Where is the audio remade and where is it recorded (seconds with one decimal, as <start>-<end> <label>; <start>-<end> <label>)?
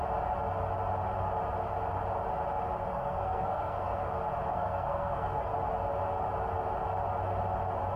0.0-2.9 recorded; 2.9-4.1 remade; 4.1-4.5 recorded; 4.5-5.5 remade; 5.5-8.0 recorded